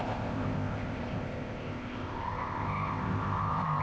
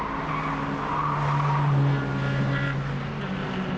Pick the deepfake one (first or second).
first